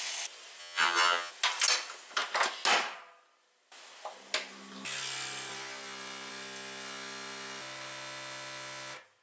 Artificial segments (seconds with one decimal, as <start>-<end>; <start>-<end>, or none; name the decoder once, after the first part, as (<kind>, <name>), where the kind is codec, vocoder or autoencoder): 0.6-1.3 (vocoder, HiFi-GAN)